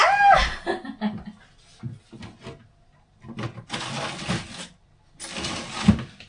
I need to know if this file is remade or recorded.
recorded